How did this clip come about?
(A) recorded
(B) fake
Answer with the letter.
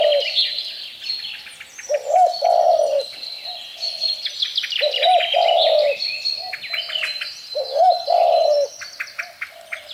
A